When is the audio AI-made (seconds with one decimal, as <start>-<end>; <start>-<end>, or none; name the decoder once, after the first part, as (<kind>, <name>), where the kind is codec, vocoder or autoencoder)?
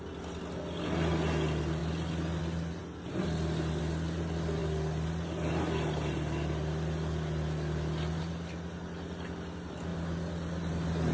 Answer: none